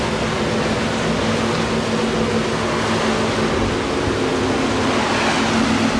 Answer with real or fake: real